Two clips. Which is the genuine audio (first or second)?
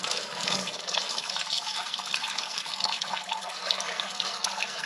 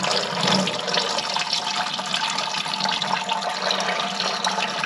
second